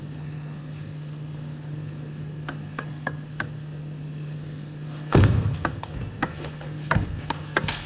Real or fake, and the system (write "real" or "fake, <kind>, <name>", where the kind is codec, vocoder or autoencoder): fake, codec, SNAC